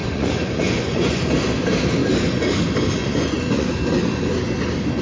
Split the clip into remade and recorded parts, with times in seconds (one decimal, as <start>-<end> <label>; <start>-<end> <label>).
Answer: 0.0-1.3 remade; 1.3-3.0 recorded; 3.0-3.7 remade; 3.7-5.0 recorded